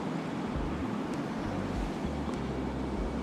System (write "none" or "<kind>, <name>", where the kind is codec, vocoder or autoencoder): none